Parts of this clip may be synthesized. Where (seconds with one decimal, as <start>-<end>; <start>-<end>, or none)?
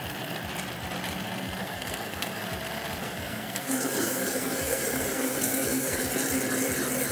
1.6-2.4; 3.0-6.0